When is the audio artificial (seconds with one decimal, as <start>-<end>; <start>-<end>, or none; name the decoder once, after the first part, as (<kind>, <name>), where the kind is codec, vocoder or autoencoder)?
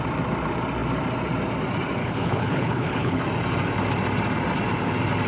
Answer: 2.0-3.2 (codec, HILCodec)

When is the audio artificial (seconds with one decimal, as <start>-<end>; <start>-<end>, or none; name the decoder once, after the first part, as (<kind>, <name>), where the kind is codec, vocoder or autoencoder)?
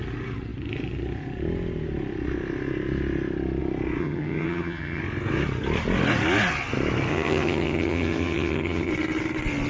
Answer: 4.0-5.0 (vocoder, HiFi-GAN); 7.1-8.9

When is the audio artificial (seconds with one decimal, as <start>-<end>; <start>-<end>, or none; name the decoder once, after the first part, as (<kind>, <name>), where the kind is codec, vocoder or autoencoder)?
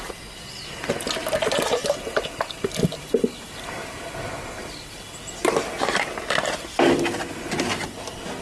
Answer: none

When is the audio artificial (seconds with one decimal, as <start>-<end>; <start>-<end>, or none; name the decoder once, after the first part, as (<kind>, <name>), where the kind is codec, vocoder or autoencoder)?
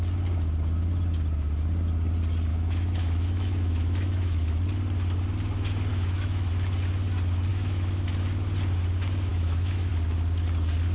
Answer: 2.5-4.6 (autoencoder, DAC-VAE); 5.9-6.5; 7.5-8.1; 9.3-9.9